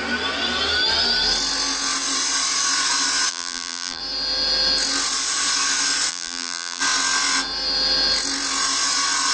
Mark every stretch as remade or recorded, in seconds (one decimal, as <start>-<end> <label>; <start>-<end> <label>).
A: 0.0-3.3 recorded; 3.3-4.0 remade; 4.0-6.1 recorded; 6.1-6.8 remade; 6.8-9.3 recorded